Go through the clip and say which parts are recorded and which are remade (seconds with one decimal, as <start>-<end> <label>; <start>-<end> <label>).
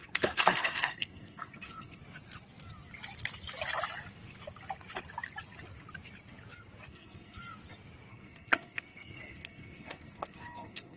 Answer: 0.0-2.0 remade; 2.0-6.9 recorded; 6.9-7.4 remade; 7.4-8.1 recorded; 8.1-11.0 remade